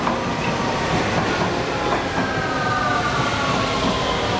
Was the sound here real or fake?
real